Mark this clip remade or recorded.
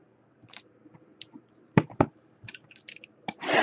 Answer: remade